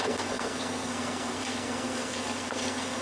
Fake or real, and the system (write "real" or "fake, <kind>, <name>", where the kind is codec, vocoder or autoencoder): fake, codec, SNAC